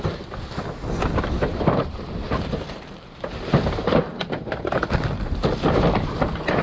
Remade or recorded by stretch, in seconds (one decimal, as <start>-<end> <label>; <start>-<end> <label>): 0.0-1.5 recorded; 1.5-5.5 remade; 5.5-6.6 recorded